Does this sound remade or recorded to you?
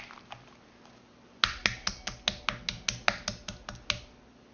recorded